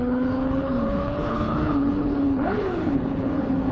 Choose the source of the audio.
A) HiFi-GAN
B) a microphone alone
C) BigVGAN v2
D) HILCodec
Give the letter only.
D